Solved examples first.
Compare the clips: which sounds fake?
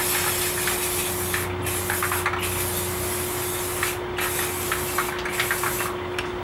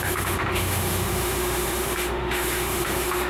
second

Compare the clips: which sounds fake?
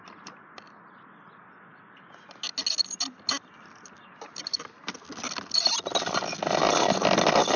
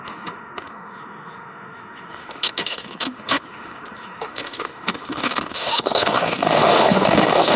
second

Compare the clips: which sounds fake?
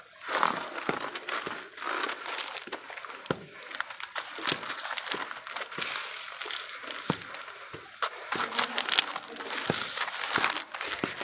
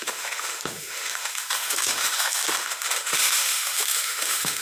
second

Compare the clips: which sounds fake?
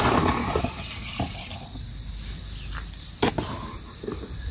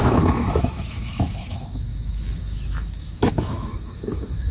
second